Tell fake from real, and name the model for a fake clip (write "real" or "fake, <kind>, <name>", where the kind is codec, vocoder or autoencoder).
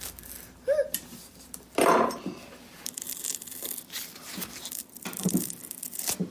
real